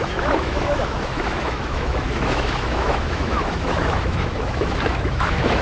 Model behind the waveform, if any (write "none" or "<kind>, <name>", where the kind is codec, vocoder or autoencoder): autoencoder, DAC-VAE